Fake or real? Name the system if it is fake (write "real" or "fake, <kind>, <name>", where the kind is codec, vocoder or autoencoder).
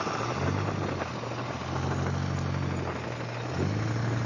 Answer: real